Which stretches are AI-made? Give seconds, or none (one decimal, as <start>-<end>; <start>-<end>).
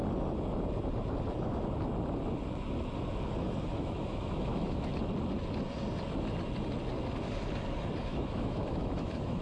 3.6-4.9; 8.0-9.4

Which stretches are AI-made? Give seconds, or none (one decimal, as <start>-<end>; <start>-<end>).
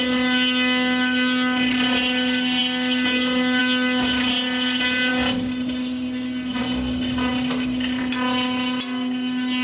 none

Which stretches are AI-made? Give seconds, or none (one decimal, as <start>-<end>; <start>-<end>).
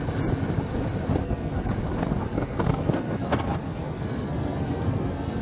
1.2-1.7; 2.2-5.4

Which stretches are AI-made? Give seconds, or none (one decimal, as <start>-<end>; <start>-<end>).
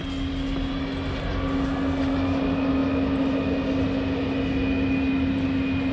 none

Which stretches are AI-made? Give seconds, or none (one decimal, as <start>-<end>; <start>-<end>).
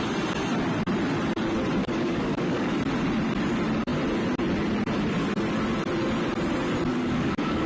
1.8-2.7; 6.9-7.7